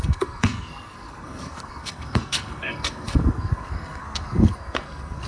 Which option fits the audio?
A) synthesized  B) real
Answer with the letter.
A